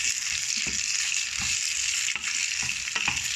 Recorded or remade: recorded